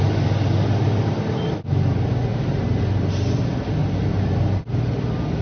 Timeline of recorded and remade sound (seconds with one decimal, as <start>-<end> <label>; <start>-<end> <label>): 0.0-2.3 recorded; 2.3-3.3 remade; 3.3-3.8 recorded; 3.8-4.6 remade; 4.6-5.4 recorded